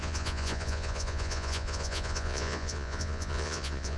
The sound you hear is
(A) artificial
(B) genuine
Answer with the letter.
A